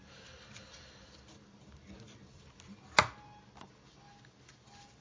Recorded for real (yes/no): yes